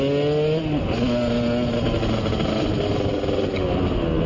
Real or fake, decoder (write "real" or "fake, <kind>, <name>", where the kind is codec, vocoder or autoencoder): real